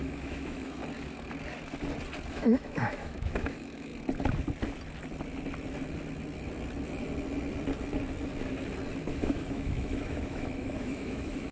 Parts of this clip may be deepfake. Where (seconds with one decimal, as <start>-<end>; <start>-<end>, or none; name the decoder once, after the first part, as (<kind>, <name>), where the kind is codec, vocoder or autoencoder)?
0.0-0.8 (autoencoder, DAC-VAE); 2.3-3.9; 9.1-11.5